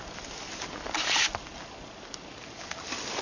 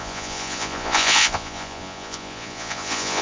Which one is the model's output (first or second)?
second